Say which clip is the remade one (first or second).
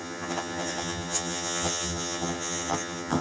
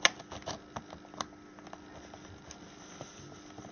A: first